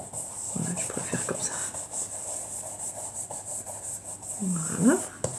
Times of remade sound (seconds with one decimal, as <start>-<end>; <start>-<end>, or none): none